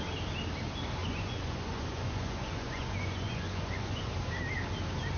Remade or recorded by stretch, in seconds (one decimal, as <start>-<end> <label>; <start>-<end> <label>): 0.0-1.0 recorded; 1.0-4.1 remade; 4.1-5.2 recorded